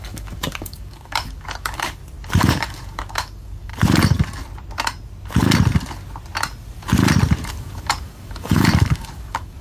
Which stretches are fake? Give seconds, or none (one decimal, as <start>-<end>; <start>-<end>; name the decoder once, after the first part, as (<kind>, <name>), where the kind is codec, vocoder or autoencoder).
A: 0.0-2.0 (codec, DAC); 2.5-3.7; 7.5-9.6